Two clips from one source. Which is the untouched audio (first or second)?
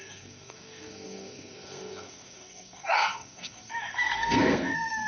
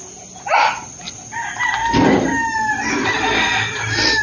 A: second